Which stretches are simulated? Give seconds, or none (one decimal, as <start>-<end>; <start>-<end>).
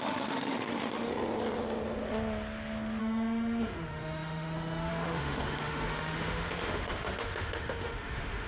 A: 0.0-1.1; 3.0-8.5